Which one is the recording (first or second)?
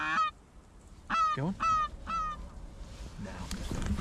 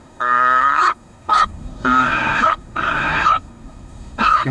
first